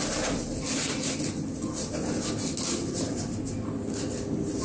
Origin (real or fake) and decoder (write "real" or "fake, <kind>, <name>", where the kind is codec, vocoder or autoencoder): real